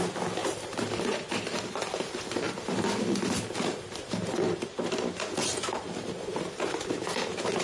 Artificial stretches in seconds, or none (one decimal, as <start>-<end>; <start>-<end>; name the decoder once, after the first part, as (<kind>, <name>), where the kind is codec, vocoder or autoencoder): 0.4-4.8 (vocoder, BigVGAN v2)